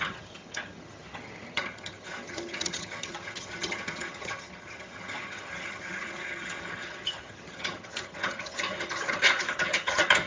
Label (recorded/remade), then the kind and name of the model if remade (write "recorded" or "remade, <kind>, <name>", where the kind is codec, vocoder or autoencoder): remade, vocoder, HiFi-GAN